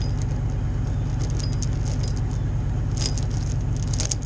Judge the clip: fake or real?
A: real